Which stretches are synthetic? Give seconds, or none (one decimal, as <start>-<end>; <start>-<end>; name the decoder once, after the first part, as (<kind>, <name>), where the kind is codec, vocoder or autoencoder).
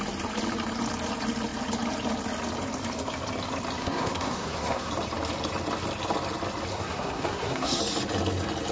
3.8-4.9 (codec, SNAC); 6.7-7.8